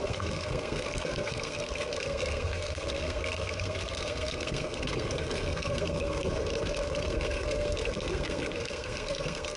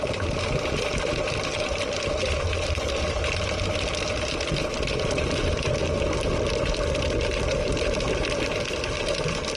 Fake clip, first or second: first